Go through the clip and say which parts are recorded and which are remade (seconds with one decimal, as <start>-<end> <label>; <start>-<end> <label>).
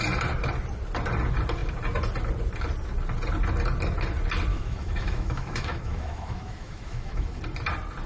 0.0-4.5 recorded; 4.5-7.4 remade; 7.4-8.1 recorded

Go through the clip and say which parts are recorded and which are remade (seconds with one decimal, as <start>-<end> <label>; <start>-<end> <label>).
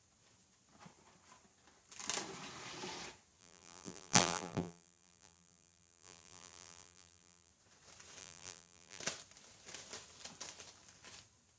0.0-3.4 recorded; 3.4-7.5 remade; 7.5-8.2 recorded; 8.2-9.0 remade; 9.0-11.6 recorded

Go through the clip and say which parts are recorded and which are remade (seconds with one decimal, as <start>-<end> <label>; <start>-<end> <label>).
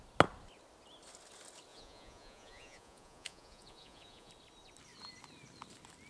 0.0-1.7 recorded; 1.7-4.3 remade; 4.3-6.1 recorded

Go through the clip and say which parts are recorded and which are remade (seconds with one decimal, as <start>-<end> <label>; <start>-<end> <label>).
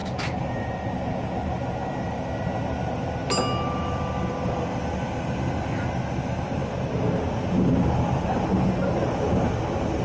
0.0-10.0 recorded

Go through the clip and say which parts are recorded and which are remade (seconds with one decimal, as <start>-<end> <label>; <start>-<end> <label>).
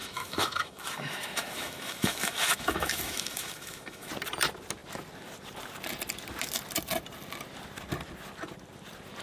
0.0-4.1 remade; 4.1-9.2 recorded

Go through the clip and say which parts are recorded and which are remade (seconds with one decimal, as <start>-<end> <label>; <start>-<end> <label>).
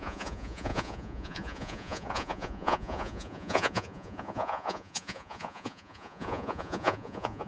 0.0-7.5 remade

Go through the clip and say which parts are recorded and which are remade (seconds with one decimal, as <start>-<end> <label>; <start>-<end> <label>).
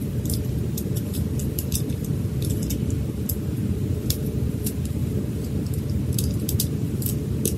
0.0-7.6 remade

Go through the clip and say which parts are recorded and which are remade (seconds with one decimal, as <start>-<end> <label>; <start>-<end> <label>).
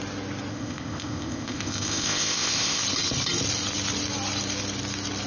0.0-0.5 recorded; 0.5-2.8 remade; 2.8-5.3 recorded